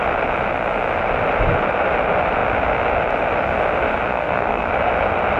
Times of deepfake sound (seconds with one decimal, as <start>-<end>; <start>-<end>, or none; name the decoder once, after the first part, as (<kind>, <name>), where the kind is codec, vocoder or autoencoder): 4.1-4.7 (codec, SNAC)